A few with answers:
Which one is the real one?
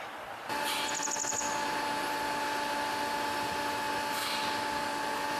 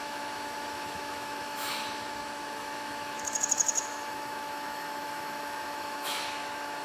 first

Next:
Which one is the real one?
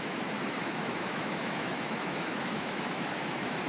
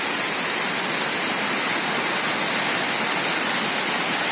second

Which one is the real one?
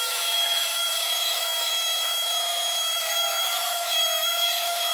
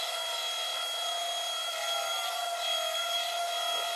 second